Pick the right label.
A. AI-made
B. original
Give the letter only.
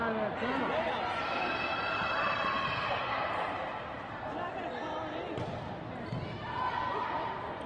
B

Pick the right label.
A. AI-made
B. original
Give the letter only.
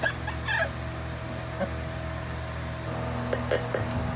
B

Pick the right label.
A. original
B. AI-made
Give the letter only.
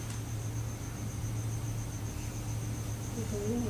A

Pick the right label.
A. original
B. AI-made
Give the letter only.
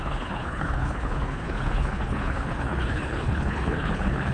B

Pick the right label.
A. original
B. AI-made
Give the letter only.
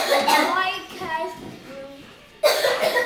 A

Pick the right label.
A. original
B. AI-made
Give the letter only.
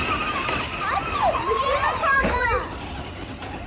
A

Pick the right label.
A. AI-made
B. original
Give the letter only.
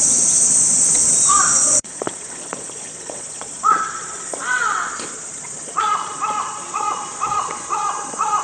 A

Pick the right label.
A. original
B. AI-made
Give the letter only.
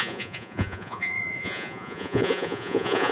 B